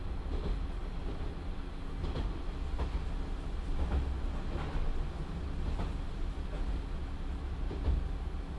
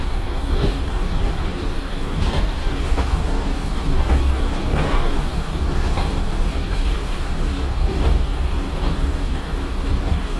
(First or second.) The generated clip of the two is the second